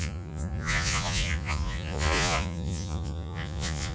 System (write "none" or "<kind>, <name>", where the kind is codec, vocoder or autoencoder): vocoder, Vocos